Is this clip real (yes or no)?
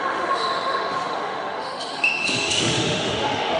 no